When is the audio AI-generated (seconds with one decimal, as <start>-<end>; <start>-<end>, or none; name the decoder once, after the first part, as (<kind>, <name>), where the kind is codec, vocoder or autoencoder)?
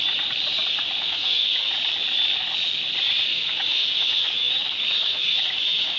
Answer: 1.0-1.7 (autoencoder, DAC-VAE); 3.3-6.0